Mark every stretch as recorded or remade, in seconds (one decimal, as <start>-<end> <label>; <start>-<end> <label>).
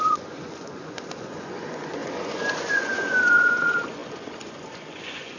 0.0-5.4 remade